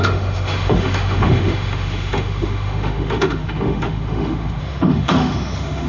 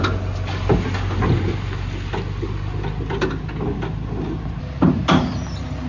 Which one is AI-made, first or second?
first